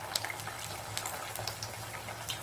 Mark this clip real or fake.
real